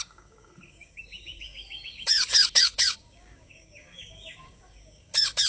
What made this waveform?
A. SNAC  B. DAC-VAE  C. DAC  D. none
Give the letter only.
C